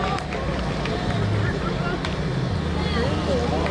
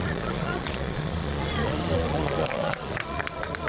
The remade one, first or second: second